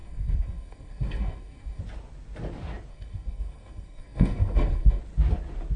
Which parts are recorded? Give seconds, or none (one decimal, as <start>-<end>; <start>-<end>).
1.8-2.9; 5.0-5.8